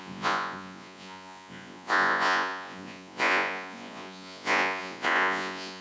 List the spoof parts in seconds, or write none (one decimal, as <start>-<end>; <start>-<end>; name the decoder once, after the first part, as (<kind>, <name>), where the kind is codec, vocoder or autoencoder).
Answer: 0.0-5.8 (vocoder, Vocos)